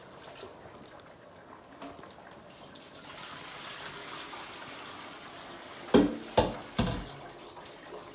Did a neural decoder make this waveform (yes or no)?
no